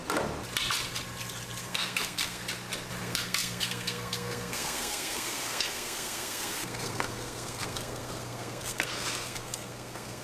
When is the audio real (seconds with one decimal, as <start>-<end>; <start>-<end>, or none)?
0.0-1.6; 2.4-3.0